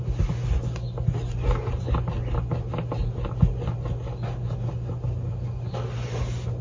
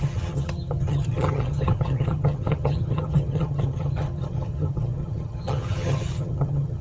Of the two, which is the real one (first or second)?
first